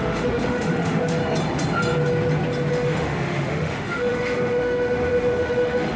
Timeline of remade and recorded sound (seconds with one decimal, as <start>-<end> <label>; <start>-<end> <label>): 0.0-1.2 remade; 1.2-2.7 recorded; 2.7-6.0 remade

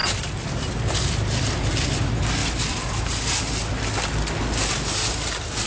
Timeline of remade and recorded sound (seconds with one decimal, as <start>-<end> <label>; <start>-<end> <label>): 0.0-5.7 recorded

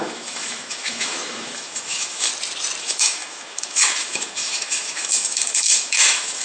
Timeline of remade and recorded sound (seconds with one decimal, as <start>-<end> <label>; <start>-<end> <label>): 0.0-2.3 remade; 2.3-2.8 recorded; 2.8-6.4 remade

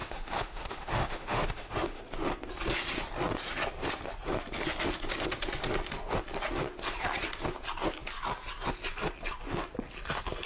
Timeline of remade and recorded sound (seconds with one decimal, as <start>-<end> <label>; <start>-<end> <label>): 0.0-2.0 remade; 2.0-10.5 recorded